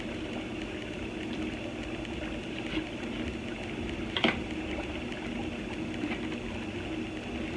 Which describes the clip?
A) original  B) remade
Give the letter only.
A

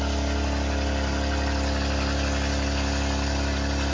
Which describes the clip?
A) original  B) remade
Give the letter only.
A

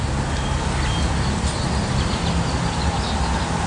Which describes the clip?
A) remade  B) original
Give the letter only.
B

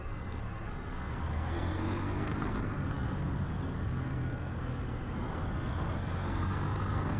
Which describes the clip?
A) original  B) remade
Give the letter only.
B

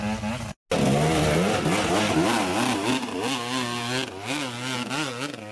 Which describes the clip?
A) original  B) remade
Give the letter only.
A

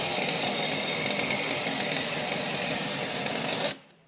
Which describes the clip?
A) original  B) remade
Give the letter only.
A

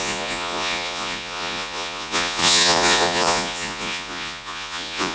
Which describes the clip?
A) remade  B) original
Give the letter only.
A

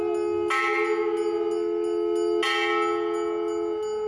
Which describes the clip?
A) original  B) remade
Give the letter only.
A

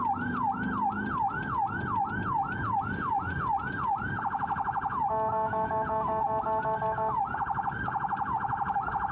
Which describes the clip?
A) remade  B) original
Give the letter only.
B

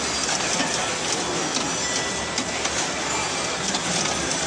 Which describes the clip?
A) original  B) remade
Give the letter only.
A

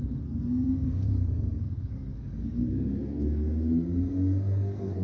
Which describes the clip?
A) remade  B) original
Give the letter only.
A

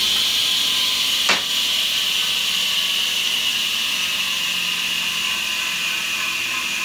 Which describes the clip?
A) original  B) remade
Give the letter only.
A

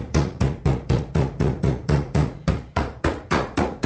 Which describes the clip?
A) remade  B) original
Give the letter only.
A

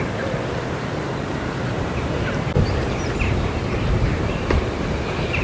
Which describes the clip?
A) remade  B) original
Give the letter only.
A